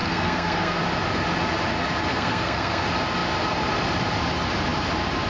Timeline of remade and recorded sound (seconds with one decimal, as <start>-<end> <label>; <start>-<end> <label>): 0.0-0.8 remade; 0.8-2.1 recorded; 2.1-2.8 remade; 2.8-5.3 recorded